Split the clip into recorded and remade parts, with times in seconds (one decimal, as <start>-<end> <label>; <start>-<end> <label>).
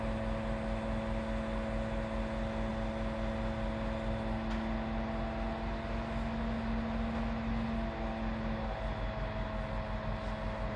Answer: 0.0-10.8 recorded